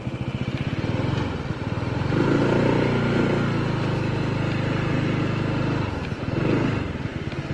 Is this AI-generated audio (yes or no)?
no